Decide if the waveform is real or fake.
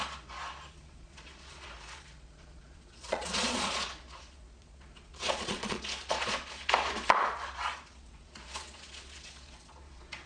fake